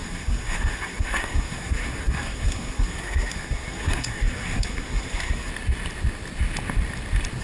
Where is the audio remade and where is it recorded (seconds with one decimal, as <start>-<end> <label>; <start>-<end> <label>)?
0.0-5.5 remade; 5.5-7.4 recorded